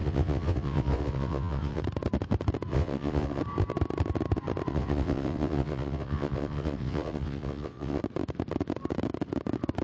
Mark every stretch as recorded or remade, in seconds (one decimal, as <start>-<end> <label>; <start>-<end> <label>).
0.0-1.8 remade; 1.8-2.7 recorded; 2.7-3.4 remade; 3.4-4.7 recorded; 4.7-8.0 remade; 8.0-9.8 recorded